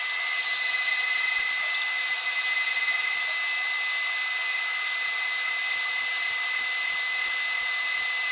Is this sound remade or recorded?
recorded